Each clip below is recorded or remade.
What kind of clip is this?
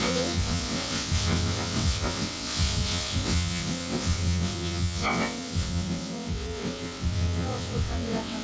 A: remade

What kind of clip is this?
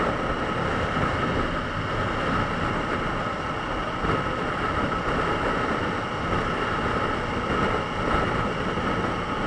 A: recorded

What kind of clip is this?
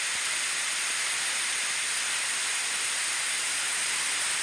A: recorded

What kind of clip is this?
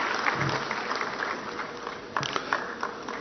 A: recorded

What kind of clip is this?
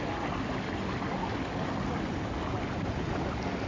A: recorded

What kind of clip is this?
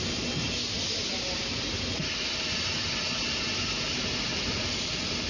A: recorded